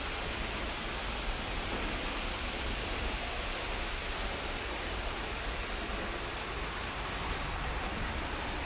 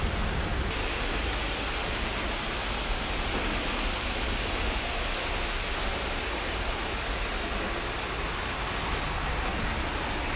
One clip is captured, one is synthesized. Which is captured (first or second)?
second